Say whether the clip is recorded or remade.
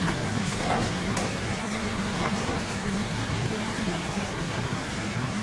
remade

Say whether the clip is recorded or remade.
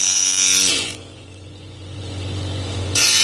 remade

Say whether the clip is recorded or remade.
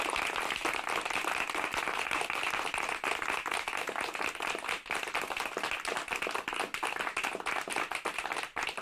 recorded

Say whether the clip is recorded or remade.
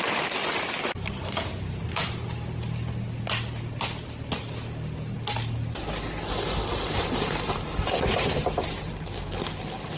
recorded